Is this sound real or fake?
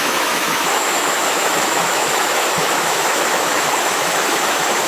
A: fake